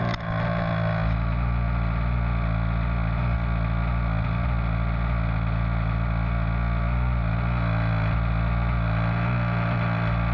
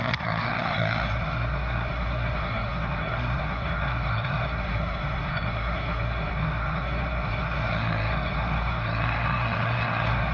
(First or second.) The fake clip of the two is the second